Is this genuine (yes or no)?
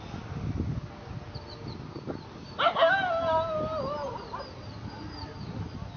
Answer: yes